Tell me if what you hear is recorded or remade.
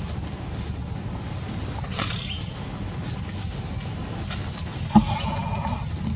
recorded